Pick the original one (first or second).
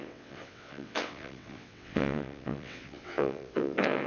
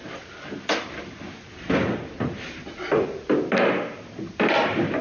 second